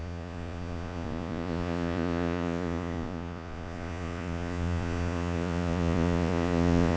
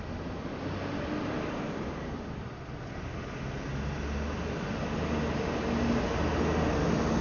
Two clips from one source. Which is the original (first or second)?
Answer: second